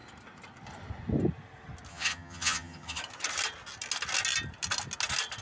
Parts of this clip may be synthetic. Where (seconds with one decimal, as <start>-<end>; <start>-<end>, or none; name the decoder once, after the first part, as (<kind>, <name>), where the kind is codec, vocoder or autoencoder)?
1.9-3.0 (vocoder, HiFi-GAN)